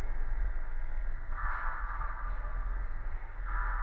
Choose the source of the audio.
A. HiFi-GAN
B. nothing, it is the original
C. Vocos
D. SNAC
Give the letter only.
D